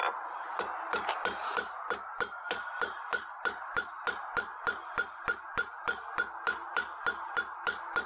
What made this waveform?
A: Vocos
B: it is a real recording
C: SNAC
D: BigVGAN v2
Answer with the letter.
B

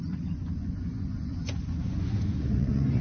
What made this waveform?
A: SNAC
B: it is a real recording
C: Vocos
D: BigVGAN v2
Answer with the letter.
C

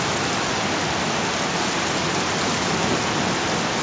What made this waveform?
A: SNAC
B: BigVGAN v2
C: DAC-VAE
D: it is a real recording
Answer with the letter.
D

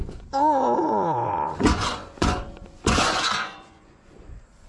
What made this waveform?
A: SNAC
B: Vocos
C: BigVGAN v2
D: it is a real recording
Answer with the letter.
B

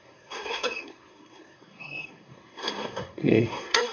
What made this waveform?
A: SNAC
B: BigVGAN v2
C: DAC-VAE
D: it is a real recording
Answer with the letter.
A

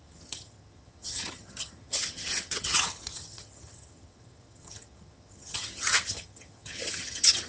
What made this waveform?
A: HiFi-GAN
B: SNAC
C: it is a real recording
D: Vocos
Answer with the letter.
A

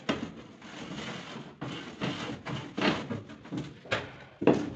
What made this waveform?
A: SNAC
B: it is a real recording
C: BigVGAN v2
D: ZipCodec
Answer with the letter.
B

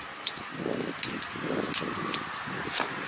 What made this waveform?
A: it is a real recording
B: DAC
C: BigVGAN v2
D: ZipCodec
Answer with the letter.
A